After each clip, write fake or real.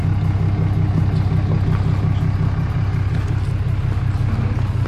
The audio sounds real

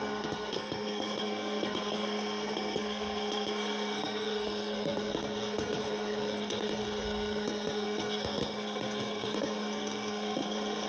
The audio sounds fake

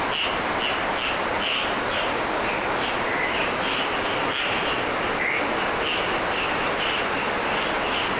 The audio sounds real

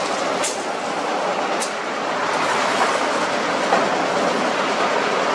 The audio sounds real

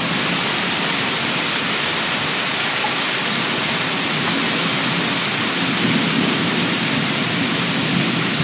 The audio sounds real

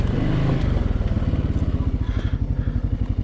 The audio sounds real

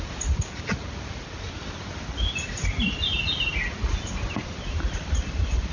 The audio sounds real